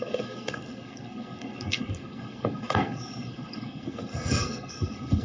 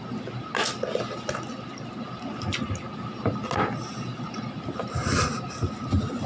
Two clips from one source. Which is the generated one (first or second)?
first